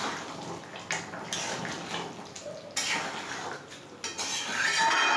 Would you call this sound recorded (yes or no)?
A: yes